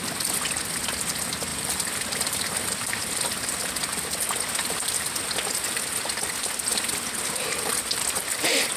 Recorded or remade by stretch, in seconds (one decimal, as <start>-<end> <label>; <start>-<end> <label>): 0.0-1.5 recorded; 1.5-3.7 remade; 3.7-6.7 recorded; 6.7-8.4 remade; 8.4-8.8 recorded